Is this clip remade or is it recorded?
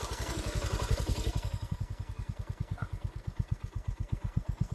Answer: remade